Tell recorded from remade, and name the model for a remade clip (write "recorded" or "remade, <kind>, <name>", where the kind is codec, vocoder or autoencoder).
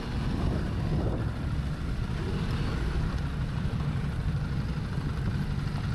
recorded